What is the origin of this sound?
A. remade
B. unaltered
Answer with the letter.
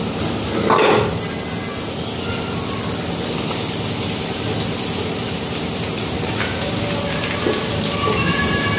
B